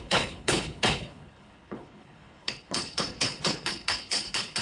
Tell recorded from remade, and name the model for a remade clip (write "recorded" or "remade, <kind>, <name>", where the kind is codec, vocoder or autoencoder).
remade, codec, HILCodec